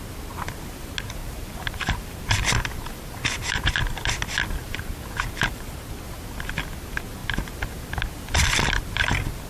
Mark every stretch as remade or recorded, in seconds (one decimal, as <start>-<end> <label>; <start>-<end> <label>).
0.0-1.2 recorded; 1.2-3.7 remade; 3.7-4.6 recorded; 4.6-5.6 remade; 5.6-9.5 recorded